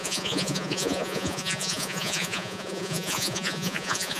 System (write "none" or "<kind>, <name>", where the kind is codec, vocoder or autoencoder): vocoder, Vocos